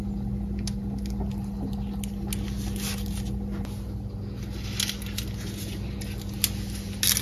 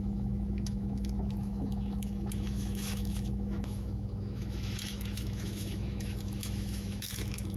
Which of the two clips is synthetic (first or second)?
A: second